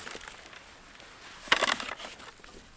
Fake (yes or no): no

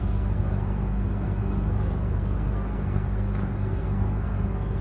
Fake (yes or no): yes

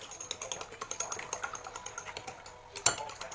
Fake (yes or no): no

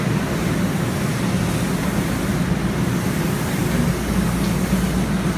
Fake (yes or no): no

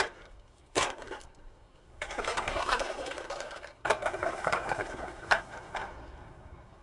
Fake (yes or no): yes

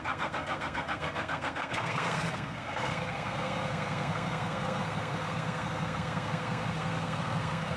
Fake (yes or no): yes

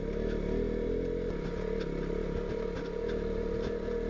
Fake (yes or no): no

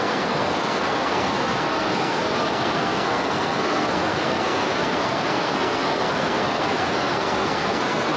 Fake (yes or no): yes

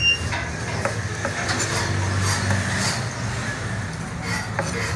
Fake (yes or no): no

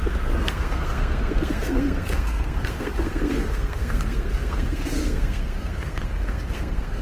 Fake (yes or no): yes